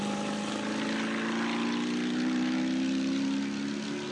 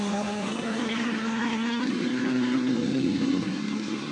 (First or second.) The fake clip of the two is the second